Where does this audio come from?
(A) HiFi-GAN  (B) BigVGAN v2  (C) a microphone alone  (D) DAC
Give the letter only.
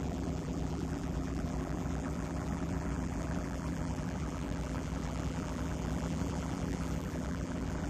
B